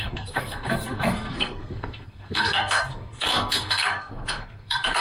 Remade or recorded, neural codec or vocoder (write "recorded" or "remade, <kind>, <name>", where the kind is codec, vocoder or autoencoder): remade, codec, SNAC